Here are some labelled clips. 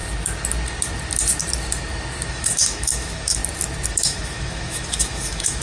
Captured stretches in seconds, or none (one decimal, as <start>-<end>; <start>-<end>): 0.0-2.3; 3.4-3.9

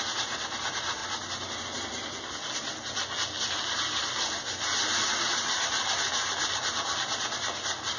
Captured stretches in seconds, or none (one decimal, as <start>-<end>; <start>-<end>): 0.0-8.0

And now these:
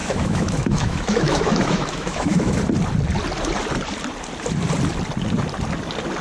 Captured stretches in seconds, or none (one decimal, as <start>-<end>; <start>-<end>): 2.6-6.2